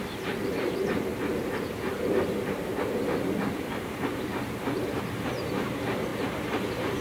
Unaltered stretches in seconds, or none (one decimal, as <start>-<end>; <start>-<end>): none